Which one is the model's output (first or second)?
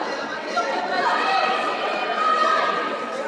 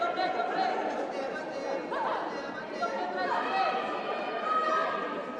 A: first